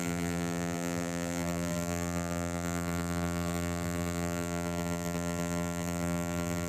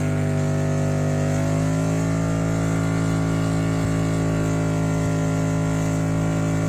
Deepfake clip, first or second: first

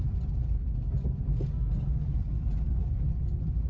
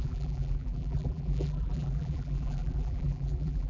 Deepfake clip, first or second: second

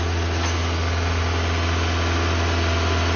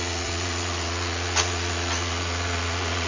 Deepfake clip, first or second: second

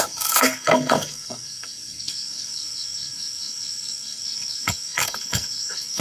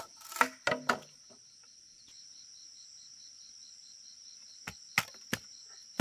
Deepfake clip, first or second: first